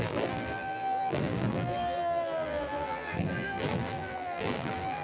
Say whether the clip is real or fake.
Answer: fake